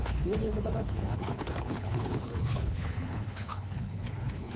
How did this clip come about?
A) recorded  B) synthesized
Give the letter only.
B